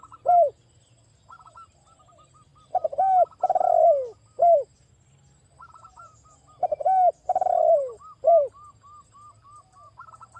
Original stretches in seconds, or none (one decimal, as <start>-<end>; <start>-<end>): 0.0-10.4